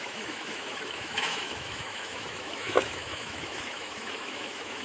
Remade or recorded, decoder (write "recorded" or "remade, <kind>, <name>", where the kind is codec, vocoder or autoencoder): remade, autoencoder, DAC-VAE